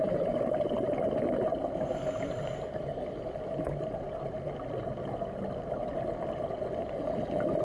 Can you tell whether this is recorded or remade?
recorded